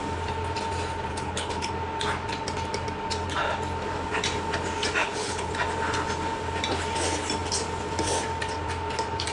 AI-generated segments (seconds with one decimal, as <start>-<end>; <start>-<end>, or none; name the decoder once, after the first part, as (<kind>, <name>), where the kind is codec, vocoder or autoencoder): 1.1-1.7 (codec, HILCodec); 5.0-5.5